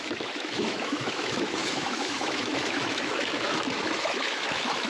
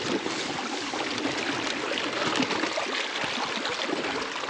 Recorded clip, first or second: second